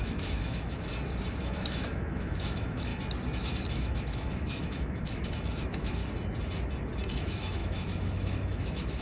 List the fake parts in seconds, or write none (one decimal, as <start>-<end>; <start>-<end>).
0.0-0.9; 1.4-2.9; 3.7-6.0; 7.1-9.0

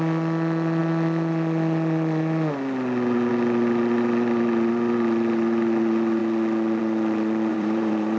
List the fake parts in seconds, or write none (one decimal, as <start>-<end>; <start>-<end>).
7.5-8.2

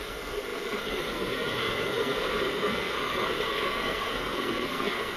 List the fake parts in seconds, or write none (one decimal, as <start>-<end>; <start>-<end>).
0.0-5.2

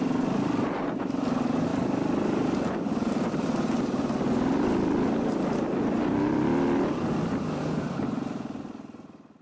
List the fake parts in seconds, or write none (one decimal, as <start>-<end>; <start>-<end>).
none

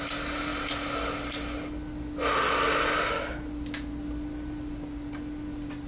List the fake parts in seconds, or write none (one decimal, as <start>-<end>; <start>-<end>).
none

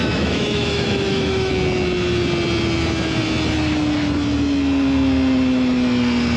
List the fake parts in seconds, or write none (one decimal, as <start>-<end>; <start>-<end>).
0.0-1.5

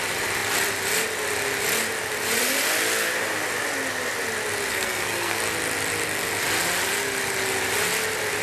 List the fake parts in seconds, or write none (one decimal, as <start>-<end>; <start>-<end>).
4.7-5.4

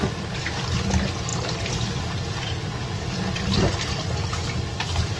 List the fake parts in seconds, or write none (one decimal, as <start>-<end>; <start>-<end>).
none